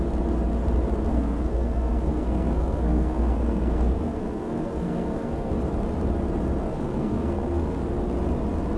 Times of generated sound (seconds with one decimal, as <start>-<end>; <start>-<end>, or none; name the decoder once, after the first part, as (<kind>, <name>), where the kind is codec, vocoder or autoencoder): 1.1-5.5 (codec, SNAC); 6.6-7.8

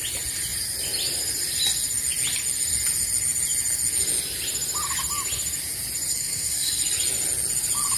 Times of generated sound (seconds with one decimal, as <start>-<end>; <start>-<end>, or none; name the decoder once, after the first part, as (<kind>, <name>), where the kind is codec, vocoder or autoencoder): 6.1-6.7 (codec, SNAC)

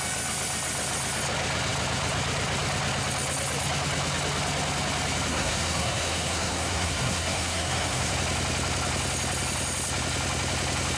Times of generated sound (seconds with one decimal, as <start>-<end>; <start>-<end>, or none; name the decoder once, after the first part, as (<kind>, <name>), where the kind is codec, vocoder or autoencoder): 5.3-8.1 (codec, SNAC)

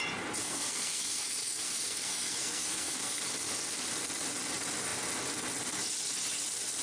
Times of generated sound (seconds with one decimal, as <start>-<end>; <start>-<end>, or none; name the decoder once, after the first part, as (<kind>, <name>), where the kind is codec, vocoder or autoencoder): 0.4-3.2 (codec, SNAC)